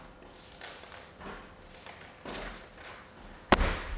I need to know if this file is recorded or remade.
recorded